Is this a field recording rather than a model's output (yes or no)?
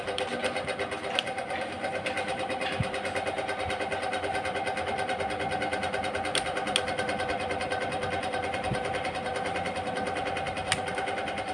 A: yes